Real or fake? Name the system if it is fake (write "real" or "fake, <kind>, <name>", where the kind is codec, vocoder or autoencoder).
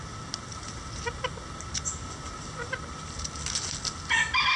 real